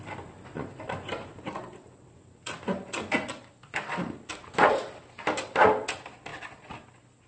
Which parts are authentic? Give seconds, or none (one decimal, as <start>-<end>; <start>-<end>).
0.0-7.3